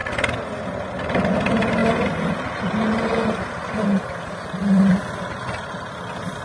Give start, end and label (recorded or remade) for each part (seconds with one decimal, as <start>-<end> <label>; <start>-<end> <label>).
0.0-6.4 recorded

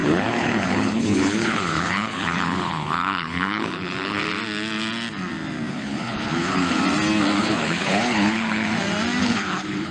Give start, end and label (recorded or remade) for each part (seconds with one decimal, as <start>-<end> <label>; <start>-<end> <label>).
0.0-4.2 remade; 4.2-5.7 recorded; 5.7-6.8 remade; 6.8-7.4 recorded; 7.4-8.7 remade; 8.7-9.2 recorded; 9.2-9.9 remade